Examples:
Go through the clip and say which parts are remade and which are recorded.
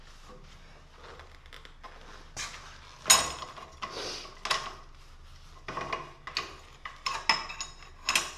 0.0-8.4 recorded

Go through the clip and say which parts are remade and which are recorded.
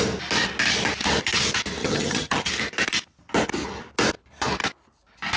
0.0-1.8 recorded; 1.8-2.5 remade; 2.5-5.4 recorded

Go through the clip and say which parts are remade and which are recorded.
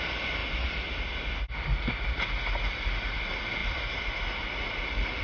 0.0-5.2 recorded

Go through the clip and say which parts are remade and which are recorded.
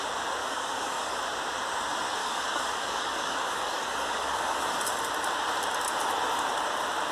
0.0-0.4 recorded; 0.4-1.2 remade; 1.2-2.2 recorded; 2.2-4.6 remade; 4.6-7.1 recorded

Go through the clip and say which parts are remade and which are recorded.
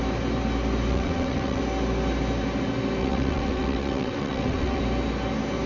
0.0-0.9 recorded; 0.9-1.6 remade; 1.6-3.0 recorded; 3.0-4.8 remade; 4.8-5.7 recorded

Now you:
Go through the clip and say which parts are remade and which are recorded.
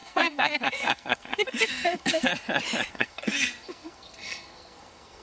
0.0-2.3 remade; 2.3-2.9 recorded; 2.9-5.2 remade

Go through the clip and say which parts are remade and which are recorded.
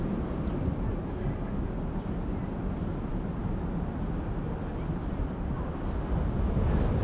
0.0-7.0 recorded